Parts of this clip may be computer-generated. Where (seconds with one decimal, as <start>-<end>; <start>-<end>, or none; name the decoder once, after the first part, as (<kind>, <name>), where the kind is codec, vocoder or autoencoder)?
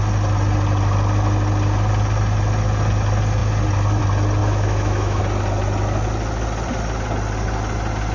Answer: 4.4-5.2 (autoencoder, DAC-VAE)